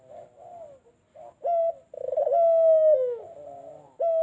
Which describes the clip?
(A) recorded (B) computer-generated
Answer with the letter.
A